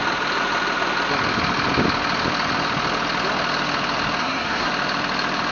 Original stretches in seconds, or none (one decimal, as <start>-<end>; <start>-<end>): 0.0-4.2; 4.7-5.5

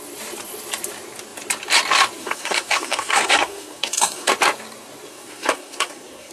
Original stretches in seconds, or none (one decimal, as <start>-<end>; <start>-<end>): 0.0-2.2; 4.3-5.1

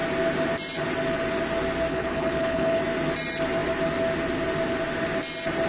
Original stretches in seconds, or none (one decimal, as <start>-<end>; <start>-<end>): 0.0-1.9; 2.8-5.7

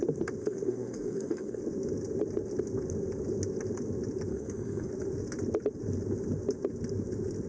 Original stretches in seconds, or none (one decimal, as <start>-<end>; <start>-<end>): 0.0-0.4; 1.6-4.3; 4.9-7.5

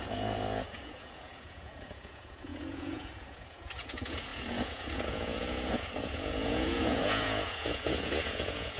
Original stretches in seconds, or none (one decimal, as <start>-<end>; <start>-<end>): none

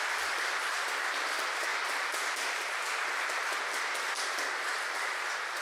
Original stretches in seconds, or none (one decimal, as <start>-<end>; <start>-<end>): 1.7-2.3

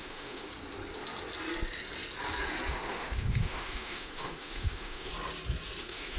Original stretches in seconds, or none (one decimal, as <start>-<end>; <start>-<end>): 0.5-2.7; 5.1-5.8

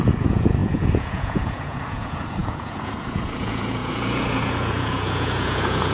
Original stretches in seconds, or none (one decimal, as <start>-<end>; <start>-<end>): none